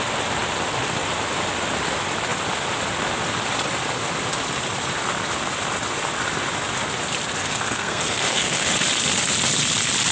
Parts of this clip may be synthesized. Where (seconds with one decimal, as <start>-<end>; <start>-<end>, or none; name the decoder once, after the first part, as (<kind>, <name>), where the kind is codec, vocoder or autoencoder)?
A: 7.4-8.7 (codec, SNAC)